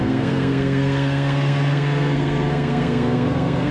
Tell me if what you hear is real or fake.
fake